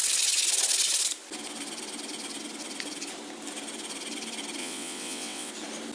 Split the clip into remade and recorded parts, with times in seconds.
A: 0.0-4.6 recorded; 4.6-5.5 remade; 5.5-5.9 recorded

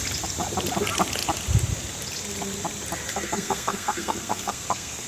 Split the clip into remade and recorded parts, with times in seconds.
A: 0.0-3.1 recorded; 3.1-5.1 remade

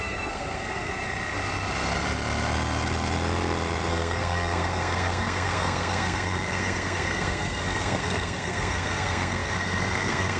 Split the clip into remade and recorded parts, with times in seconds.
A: 0.0-0.9 remade; 0.9-3.9 recorded; 3.9-10.4 remade

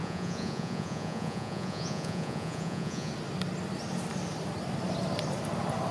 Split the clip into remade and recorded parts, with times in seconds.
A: 0.0-3.1 remade; 3.1-5.9 recorded